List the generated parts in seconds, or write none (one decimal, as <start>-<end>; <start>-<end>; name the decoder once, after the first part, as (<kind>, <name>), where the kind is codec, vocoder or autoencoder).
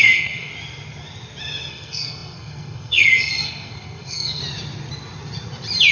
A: 0.0-0.5 (codec, SNAC); 1.7-4.4